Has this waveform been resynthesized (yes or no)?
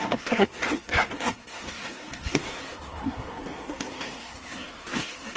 yes